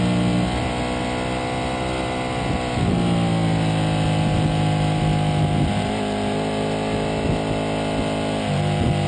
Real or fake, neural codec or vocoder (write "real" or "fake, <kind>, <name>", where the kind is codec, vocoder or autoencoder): real